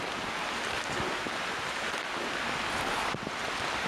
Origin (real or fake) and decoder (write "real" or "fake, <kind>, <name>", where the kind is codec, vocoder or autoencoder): real